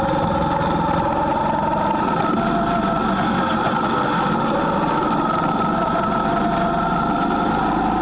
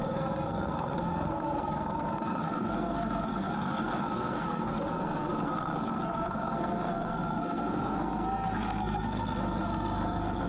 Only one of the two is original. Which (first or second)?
first